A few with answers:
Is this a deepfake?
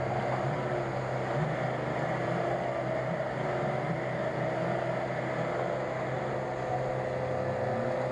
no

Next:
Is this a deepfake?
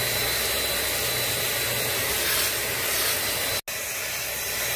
no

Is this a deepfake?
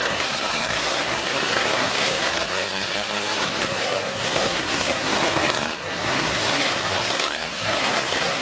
yes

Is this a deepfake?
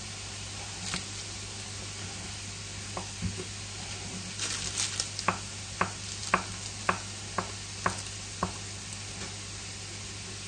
no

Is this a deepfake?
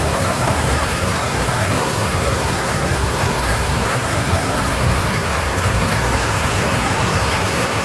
yes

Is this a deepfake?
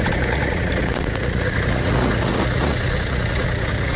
yes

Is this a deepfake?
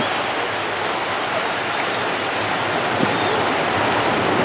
no